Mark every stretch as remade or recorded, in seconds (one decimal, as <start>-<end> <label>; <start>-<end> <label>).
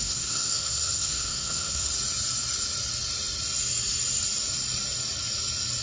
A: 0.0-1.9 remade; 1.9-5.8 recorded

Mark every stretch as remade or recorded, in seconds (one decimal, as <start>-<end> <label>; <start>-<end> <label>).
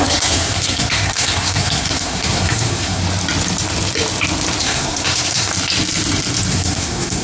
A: 0.0-3.0 remade; 3.0-4.6 recorded; 4.6-5.5 remade; 5.5-6.5 recorded; 6.5-7.2 remade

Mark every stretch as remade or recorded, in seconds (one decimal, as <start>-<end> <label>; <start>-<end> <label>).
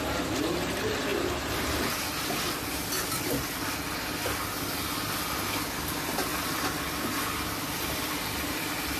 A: 0.0-9.0 recorded